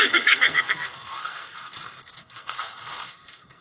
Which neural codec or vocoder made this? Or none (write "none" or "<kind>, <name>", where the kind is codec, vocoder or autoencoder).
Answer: codec, SNAC